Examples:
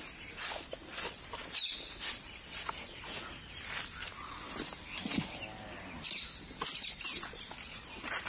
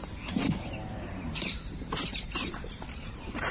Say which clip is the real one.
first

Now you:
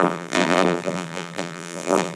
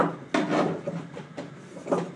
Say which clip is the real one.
second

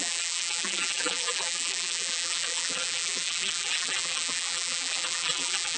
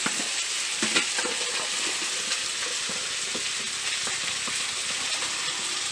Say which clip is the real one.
second